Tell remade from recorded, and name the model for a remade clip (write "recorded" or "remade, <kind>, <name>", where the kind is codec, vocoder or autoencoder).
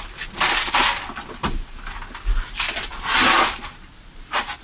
recorded